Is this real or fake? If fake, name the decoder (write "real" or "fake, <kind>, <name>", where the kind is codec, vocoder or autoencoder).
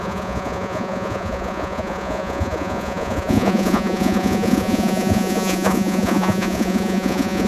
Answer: fake, vocoder, Vocos